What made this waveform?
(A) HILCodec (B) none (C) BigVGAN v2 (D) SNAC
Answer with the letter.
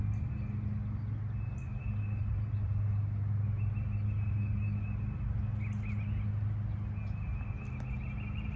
B